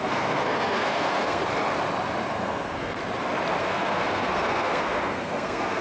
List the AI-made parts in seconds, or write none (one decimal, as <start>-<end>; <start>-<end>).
0.0-1.4; 2.3-3.0; 3.6-5.8